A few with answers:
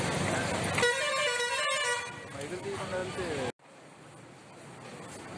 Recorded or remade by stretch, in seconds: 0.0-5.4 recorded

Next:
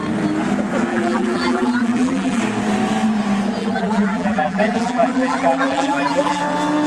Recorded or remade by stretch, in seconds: 0.0-0.9 recorded; 0.9-2.4 remade; 2.4-3.6 recorded; 3.6-6.4 remade; 6.4-6.9 recorded

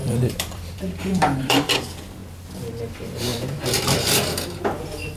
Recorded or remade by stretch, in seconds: 0.0-2.2 remade; 2.2-2.9 recorded; 2.9-5.2 remade

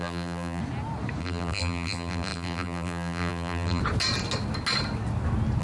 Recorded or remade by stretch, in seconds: 0.0-0.6 remade; 0.6-1.2 recorded; 1.2-3.8 remade; 3.8-5.6 recorded

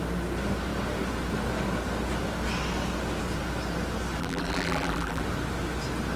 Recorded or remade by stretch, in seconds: 0.0-4.2 recorded; 4.2-5.2 remade; 5.2-6.2 recorded

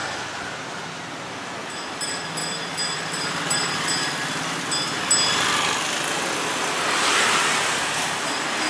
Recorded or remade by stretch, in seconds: 0.0-0.5 remade; 0.5-2.4 recorded; 2.4-3.1 remade; 3.1-8.7 recorded